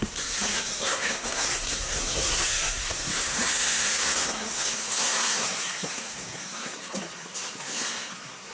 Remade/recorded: remade